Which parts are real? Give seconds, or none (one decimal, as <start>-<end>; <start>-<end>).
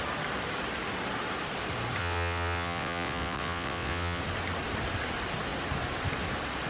0.0-2.0; 4.2-6.7